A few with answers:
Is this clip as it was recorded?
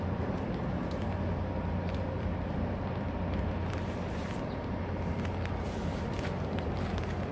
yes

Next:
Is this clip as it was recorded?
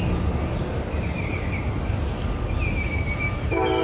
yes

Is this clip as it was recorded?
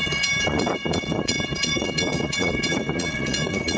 no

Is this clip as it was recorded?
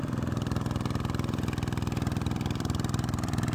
no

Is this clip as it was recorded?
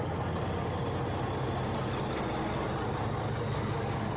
yes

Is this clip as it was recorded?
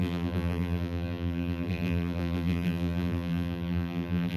no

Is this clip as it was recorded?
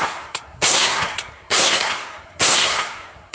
no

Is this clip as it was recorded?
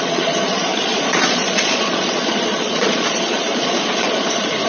no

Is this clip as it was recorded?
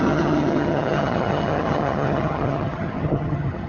no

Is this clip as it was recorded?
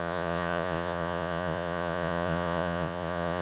no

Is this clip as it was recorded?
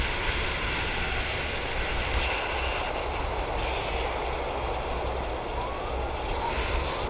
yes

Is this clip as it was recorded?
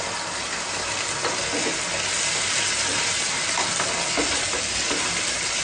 yes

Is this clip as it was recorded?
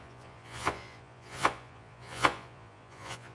no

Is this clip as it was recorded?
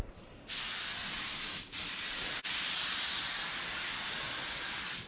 yes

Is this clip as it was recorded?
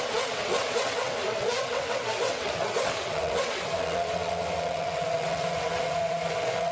no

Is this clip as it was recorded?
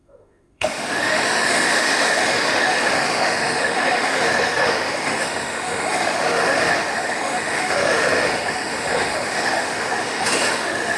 no